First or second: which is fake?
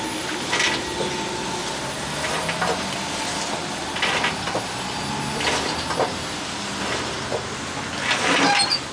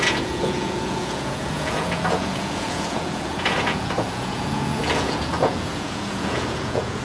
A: second